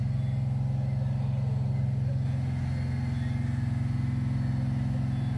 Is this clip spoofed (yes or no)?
no